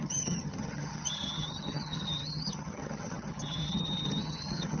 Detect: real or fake fake